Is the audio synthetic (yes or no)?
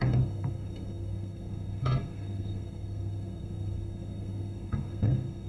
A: yes